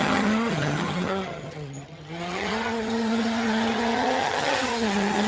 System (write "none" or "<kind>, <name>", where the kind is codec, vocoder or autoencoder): vocoder, HiFi-GAN